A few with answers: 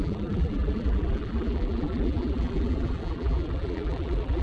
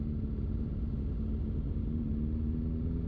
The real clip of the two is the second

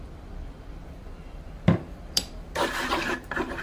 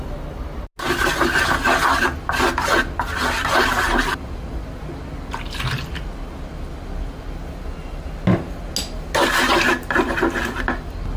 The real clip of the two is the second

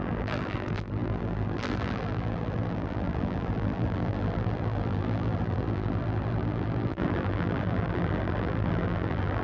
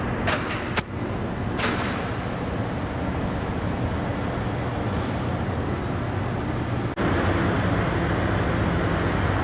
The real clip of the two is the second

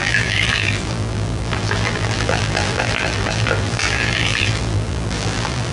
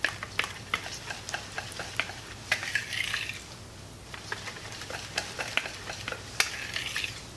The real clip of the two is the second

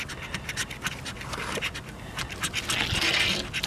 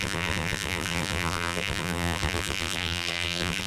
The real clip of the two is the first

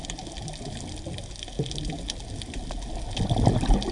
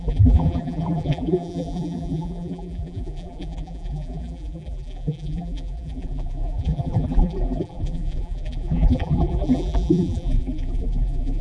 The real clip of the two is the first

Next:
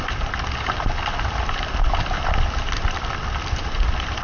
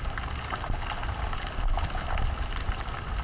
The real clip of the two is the second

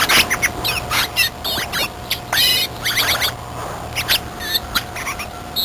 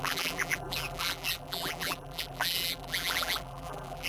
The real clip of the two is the first